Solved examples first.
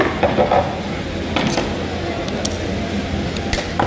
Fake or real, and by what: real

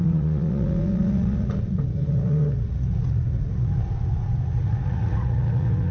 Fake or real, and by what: fake, vocoder, Vocos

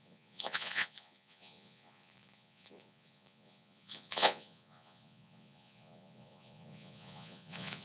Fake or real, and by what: fake, vocoder, Vocos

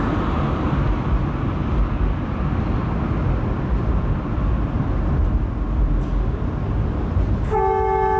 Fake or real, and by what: real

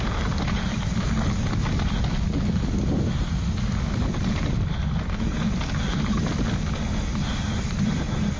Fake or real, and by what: real